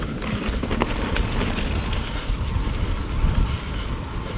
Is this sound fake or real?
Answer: real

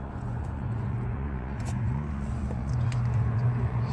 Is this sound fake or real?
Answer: fake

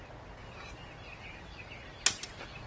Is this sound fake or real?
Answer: real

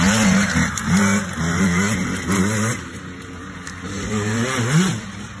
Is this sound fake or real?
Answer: fake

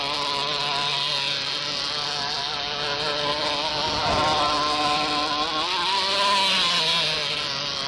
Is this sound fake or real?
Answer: real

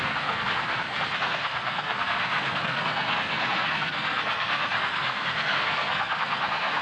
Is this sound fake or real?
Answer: fake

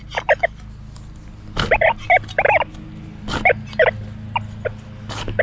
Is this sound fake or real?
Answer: real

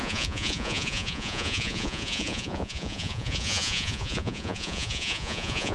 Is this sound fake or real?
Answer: fake